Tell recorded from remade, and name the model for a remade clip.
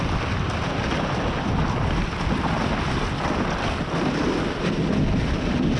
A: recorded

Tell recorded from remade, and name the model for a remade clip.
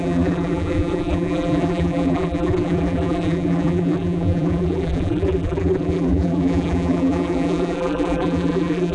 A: remade, vocoder, BigVGAN v2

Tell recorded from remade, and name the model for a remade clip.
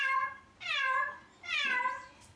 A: remade, vocoder, BigVGAN v2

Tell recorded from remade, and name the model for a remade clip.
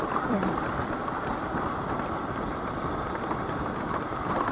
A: remade, vocoder, BigVGAN v2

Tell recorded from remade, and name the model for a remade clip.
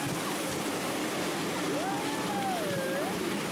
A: recorded